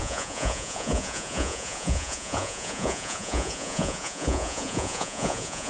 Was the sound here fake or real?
fake